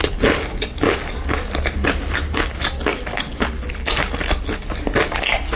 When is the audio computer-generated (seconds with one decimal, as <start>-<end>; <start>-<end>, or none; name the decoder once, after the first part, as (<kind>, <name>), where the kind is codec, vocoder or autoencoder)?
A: none

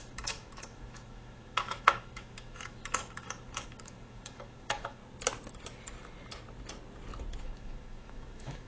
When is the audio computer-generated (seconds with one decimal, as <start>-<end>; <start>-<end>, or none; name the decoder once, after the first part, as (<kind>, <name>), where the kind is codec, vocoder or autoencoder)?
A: 0.0-5.0 (autoencoder, DAC-VAE); 7.4-8.7

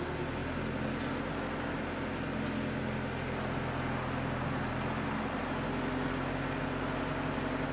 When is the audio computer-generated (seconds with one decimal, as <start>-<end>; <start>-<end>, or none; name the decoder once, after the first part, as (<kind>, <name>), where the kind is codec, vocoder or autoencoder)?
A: none

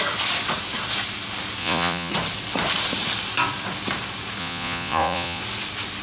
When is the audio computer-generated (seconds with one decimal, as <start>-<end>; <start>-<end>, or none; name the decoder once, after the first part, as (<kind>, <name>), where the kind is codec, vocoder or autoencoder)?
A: 1.6-2.1 (vocoder, Vocos); 4.4-5.4

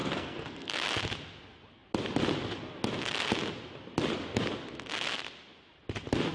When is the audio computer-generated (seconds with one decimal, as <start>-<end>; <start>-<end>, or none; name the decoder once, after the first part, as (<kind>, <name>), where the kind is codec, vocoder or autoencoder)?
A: 0.0-0.7 (codec, SNAC)